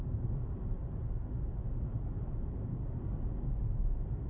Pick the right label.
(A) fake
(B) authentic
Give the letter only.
B